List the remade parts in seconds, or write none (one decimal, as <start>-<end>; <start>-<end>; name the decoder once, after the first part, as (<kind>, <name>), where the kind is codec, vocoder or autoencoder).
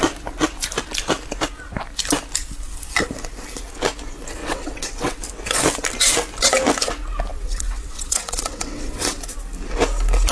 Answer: 4.4-5.2 (vocoder, WaveNeXt); 7.3-9.2